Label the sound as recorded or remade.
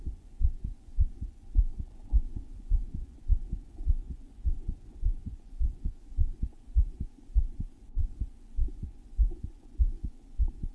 remade